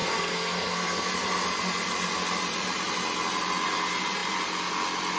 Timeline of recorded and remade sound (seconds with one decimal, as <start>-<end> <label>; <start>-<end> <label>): 0.0-1.1 remade; 1.1-5.2 recorded